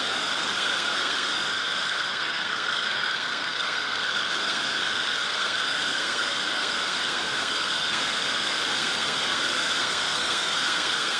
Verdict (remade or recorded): remade